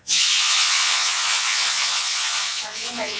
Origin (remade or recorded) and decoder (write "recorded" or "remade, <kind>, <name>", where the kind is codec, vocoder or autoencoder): remade, vocoder, Vocos